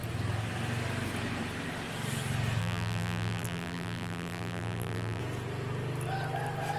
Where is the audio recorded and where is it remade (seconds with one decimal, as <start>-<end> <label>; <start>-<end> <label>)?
0.0-2.6 recorded; 2.6-5.2 remade; 5.2-6.8 recorded